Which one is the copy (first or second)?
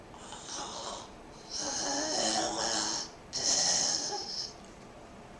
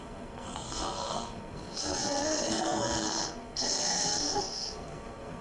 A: second